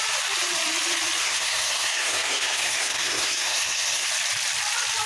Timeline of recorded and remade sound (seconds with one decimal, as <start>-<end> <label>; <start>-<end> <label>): 0.0-1.2 recorded; 1.2-4.1 remade; 4.1-5.1 recorded